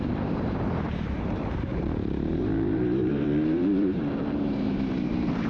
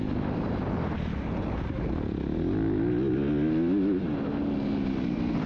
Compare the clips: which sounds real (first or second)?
second